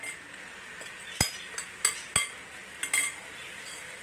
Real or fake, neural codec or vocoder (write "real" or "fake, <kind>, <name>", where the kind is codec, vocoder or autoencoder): real